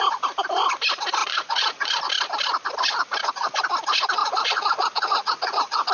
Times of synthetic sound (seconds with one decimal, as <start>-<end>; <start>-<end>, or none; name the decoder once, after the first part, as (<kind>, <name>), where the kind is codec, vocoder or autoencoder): 1.2-2.0 (vocoder, Vocos); 4.2-5.9